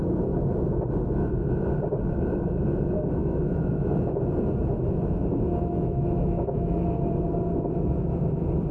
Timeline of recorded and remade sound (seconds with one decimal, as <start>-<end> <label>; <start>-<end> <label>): 0.0-3.2 recorded; 3.2-4.1 remade; 4.1-5.2 recorded; 5.2-7.1 remade; 7.1-8.7 recorded